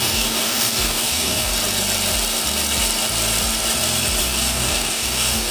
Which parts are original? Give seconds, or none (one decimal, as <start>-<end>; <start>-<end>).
1.5-4.2